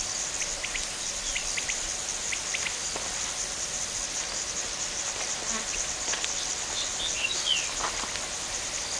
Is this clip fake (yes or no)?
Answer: no